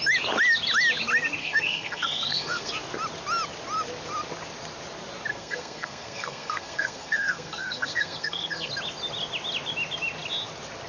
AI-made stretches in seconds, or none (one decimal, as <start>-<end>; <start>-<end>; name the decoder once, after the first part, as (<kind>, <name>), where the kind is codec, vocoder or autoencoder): 1.4-2.7 (codec, SNAC); 5.3-8.7